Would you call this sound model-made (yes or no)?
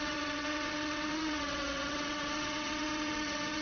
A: yes